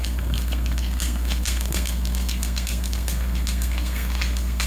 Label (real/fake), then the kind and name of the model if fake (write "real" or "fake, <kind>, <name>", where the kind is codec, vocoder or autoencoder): fake, codec, SNAC